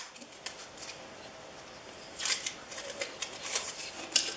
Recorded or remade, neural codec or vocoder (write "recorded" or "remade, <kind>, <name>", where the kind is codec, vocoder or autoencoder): recorded